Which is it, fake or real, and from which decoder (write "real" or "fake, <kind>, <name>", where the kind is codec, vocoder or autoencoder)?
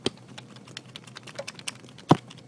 real